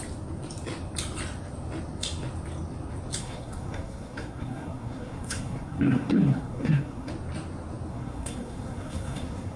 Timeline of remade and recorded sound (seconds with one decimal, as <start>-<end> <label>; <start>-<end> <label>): 0.0-3.2 recorded; 3.2-7.1 remade; 7.1-7.9 recorded; 7.9-9.6 remade

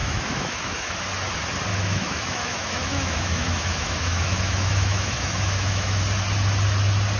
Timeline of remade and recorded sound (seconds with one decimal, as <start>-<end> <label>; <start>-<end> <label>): 0.0-0.9 remade; 0.9-1.7 recorded; 1.7-6.0 remade; 6.0-7.2 recorded

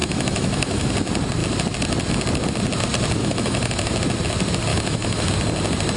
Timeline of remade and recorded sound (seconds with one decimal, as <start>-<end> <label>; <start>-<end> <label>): 0.0-0.9 remade; 0.9-3.2 recorded; 3.2-3.9 remade; 3.9-4.7 recorded; 4.7-5.3 remade; 5.3-6.0 recorded

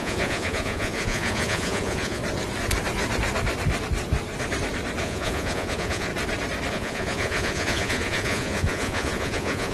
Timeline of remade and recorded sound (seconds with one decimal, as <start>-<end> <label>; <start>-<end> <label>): 0.0-2.2 remade; 2.2-5.0 recorded; 5.0-6.1 remade; 6.1-6.7 recorded; 6.7-9.7 remade

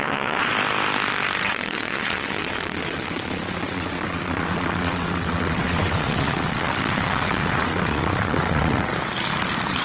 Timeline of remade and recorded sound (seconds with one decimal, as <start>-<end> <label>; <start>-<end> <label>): 0.0-0.5 remade; 0.5-1.4 recorded; 1.4-8.9 remade; 8.9-9.8 recorded

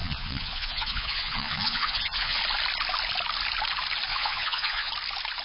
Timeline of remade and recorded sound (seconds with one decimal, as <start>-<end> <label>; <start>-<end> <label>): 0.0-2.4 remade; 2.4-4.1 recorded; 4.1-4.9 remade; 4.9-5.4 recorded

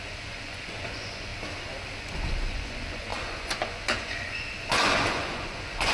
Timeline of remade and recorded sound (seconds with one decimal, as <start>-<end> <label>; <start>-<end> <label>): 0.0-1.3 remade; 1.3-2.0 recorded; 2.0-5.9 remade